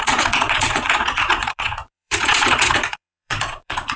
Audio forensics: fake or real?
fake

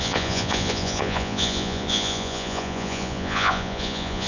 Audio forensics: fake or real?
fake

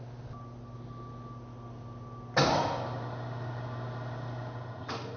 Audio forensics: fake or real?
real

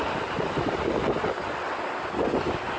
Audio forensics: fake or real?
real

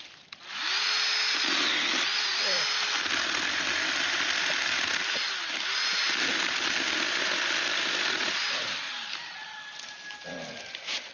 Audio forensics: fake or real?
real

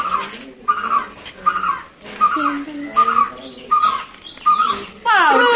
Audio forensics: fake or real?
real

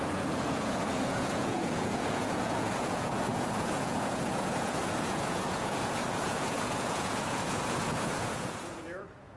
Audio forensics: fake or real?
fake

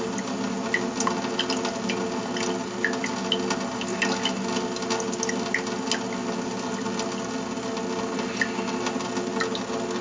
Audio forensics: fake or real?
real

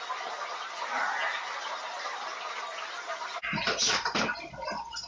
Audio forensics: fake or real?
real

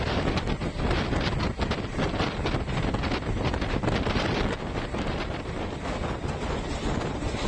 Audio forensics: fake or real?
real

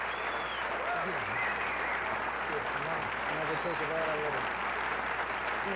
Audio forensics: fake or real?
real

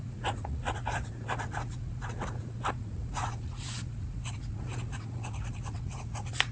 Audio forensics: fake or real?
fake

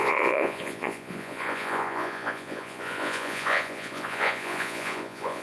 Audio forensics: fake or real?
fake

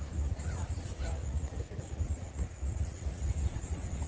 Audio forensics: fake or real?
fake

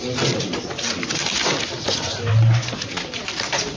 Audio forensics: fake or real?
real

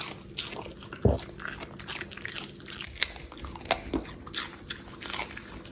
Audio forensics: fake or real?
real